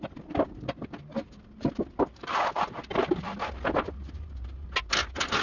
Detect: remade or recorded recorded